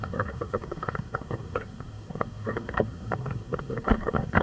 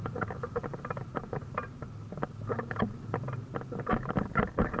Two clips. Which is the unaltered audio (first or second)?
second